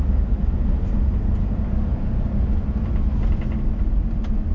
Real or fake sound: real